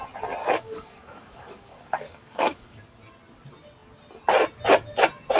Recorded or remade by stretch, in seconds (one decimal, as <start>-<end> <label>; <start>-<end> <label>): 0.0-0.4 recorded; 0.4-2.8 remade; 2.8-5.4 recorded